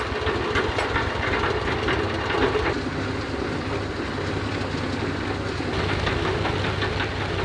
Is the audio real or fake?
real